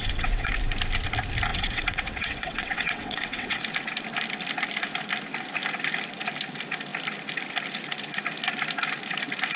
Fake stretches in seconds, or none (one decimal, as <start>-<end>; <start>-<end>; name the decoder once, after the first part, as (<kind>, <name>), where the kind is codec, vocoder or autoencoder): 0.0-0.5 (vocoder, WaveNeXt); 1.5-3.6